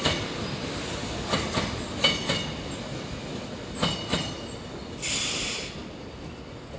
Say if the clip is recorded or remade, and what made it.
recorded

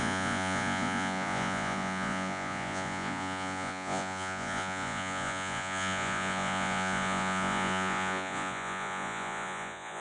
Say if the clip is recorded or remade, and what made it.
remade, vocoder, Vocos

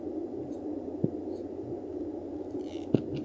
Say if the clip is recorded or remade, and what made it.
recorded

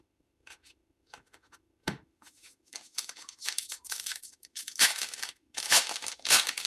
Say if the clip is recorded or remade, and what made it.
remade, autoencoder, DAC-VAE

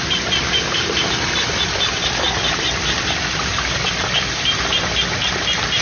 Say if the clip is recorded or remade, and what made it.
recorded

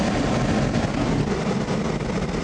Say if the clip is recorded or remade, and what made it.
recorded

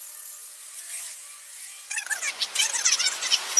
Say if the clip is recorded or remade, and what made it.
remade, vocoder, Vocos